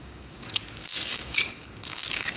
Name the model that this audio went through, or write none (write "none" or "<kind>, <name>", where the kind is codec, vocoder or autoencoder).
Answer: codec, DAC